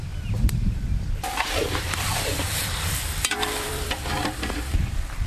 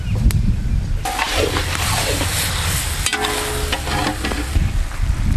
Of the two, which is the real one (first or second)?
second